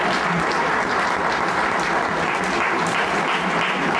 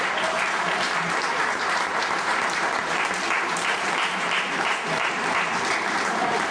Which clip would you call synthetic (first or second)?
second